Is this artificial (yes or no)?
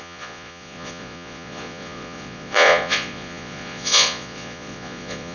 yes